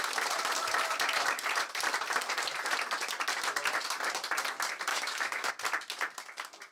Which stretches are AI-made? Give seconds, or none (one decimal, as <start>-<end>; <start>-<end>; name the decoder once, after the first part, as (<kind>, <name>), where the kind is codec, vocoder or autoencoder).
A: 4.9-5.5 (autoencoder, DAC-VAE)